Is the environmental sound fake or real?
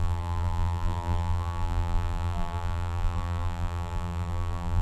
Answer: fake